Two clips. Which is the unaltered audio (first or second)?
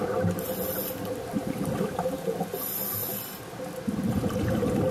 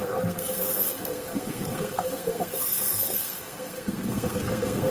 first